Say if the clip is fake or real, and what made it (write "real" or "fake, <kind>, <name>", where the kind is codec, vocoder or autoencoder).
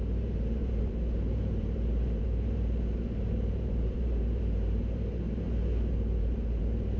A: fake, vocoder, BigVGAN v2